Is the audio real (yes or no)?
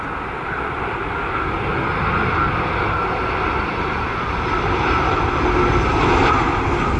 yes